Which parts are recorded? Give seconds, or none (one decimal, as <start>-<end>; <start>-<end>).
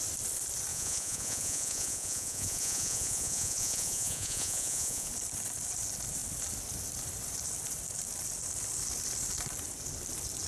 0.0-0.7; 5.1-10.5